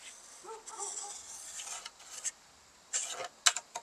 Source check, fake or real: real